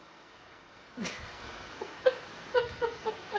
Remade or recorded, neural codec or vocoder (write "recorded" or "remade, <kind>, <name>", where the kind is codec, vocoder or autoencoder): remade, codec, SNAC